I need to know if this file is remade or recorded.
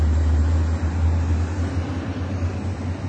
recorded